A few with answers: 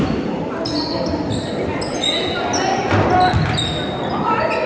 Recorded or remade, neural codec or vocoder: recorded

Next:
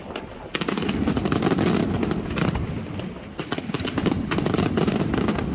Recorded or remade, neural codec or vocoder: recorded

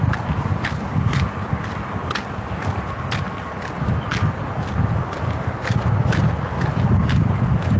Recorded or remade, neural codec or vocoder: recorded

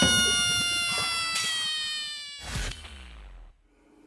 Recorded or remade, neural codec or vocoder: recorded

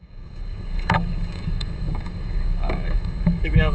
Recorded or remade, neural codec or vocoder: remade, codec, DAC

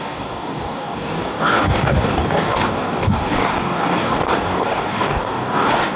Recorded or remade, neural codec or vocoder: remade, codec, DAC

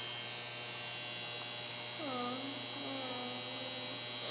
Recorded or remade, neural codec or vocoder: recorded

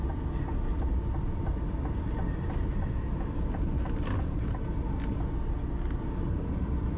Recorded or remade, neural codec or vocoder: recorded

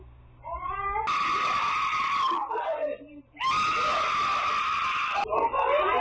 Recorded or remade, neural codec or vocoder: recorded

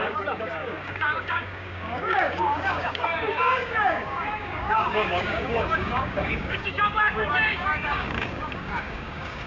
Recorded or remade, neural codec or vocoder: remade, codec, DAC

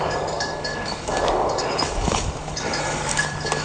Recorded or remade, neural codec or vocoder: remade, codec, DAC